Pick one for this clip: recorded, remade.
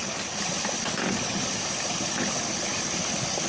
recorded